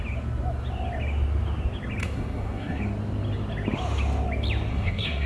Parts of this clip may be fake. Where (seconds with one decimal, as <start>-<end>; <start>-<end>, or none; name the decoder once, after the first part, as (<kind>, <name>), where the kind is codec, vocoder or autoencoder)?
2.0-2.8 (codec, SNAC); 4.7-5.3